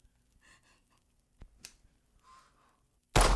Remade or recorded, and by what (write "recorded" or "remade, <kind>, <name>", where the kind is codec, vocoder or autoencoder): recorded